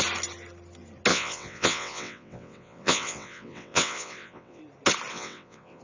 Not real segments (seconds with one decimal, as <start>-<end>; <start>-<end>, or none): 1.1-4.6; 5.1-5.8